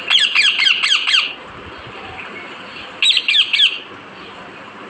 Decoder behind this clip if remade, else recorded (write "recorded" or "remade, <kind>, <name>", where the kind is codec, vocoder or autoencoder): remade, vocoder, BigVGAN v2